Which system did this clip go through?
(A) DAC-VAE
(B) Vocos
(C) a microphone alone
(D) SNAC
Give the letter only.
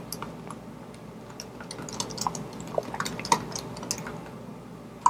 C